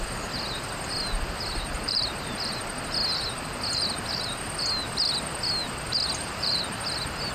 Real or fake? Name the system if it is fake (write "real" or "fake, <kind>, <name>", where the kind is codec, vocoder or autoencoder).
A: real